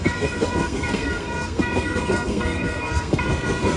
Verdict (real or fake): fake